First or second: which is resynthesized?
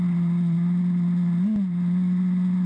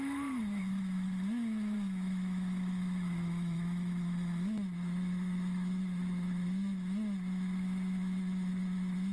second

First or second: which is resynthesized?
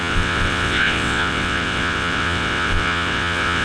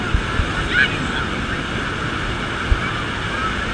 first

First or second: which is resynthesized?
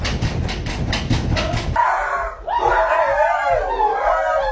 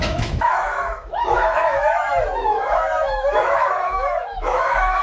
second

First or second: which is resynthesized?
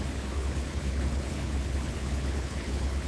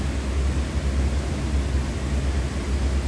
first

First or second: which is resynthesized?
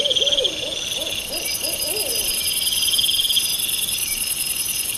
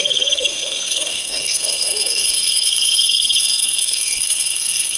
second